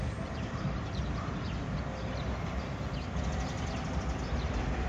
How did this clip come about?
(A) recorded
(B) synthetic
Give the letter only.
A